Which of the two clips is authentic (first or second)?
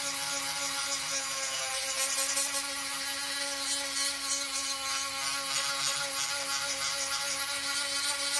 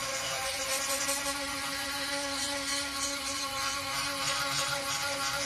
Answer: first